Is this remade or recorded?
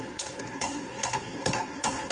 remade